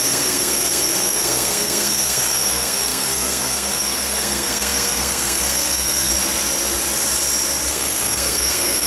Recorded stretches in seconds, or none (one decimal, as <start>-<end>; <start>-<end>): 6.1-7.7